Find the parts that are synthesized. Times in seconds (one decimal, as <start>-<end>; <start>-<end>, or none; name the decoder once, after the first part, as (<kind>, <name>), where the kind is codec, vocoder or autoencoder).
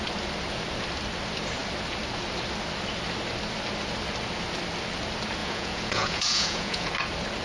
5.4-6.9 (vocoder, Vocos)